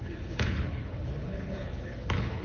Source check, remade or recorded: remade